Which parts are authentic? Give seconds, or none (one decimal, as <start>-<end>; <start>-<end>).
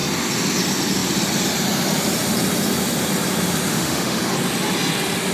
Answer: 0.0-3.7; 4.2-5.3